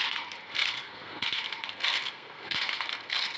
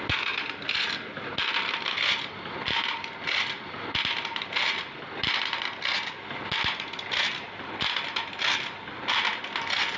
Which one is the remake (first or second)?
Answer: first